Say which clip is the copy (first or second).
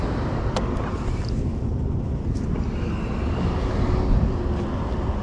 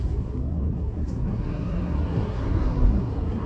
second